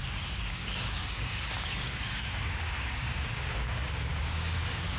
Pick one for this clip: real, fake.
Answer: fake